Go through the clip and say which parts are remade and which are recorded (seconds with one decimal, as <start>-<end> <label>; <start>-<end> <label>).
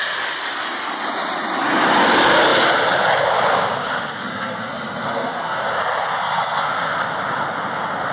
0.0-4.2 recorded; 4.2-5.6 remade; 5.6-6.1 recorded; 6.1-6.8 remade; 6.8-8.1 recorded